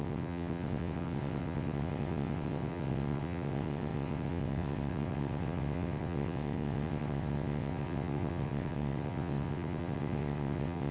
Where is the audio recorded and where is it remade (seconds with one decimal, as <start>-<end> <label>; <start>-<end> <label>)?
0.0-10.9 remade

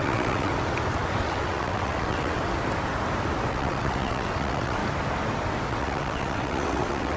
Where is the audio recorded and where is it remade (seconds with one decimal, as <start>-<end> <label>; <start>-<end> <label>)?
0.0-0.5 remade; 0.5-1.2 recorded; 1.2-2.4 remade; 2.4-3.5 recorded; 3.5-4.8 remade; 4.8-5.7 recorded; 5.7-7.2 remade